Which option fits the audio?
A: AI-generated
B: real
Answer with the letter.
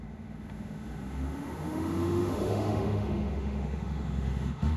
A